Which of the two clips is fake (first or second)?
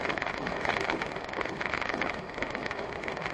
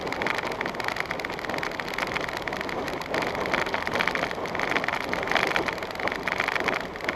first